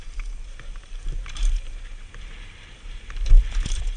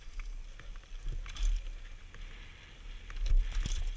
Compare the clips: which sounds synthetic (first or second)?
first